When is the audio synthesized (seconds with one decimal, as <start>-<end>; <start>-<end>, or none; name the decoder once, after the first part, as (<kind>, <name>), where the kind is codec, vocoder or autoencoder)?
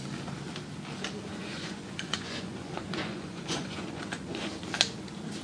1.3-4.5 (vocoder, Vocos)